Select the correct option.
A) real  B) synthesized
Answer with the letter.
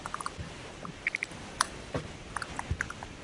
B